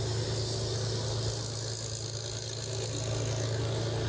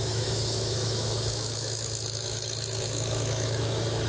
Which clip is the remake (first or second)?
second